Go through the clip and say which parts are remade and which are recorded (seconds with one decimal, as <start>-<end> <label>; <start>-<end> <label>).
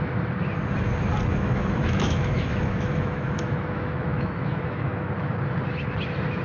0.0-1.3 recorded; 1.3-5.1 remade; 5.1-6.4 recorded